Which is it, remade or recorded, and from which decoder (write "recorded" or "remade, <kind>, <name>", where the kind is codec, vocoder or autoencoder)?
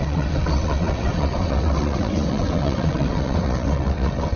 remade, vocoder, WaveNeXt